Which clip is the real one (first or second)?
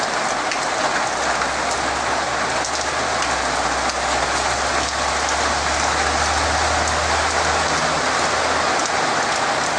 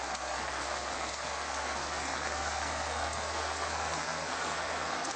first